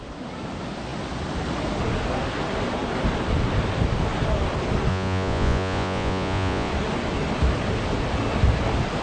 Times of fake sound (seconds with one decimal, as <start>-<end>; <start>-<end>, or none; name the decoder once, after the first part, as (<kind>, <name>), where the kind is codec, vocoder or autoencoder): 4.9-6.7 (vocoder, Vocos)